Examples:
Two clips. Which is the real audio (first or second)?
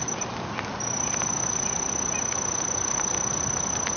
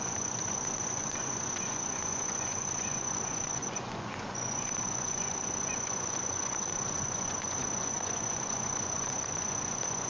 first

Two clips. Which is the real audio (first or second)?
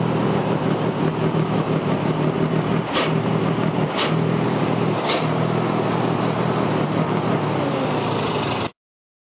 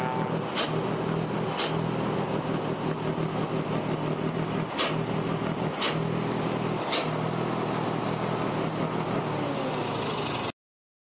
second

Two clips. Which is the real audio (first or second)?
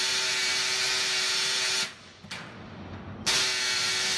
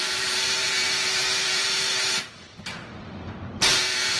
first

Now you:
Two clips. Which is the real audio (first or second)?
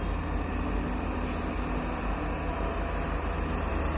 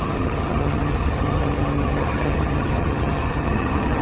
first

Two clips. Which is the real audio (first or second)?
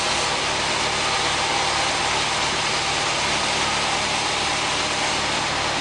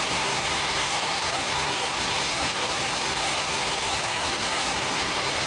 first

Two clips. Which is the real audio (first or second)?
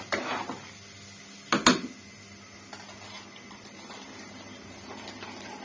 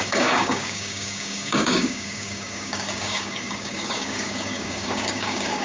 first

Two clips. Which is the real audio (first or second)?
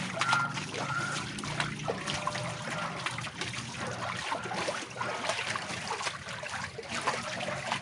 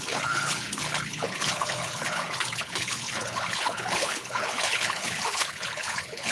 first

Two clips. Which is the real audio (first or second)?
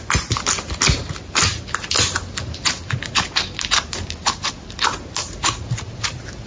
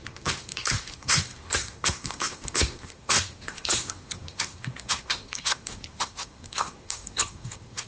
first